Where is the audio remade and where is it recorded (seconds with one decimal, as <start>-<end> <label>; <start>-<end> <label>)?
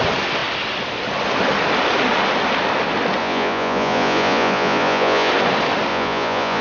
0.0-3.2 recorded; 3.2-5.3 remade; 5.3-5.9 recorded; 5.9-6.6 remade